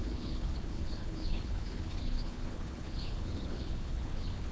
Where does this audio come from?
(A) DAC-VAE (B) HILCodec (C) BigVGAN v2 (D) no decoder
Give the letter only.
B